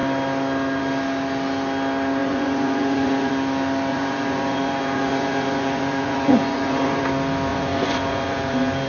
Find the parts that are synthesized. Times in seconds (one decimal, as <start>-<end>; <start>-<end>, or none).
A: 2.2-3.3; 3.9-7.0; 7.5-8.5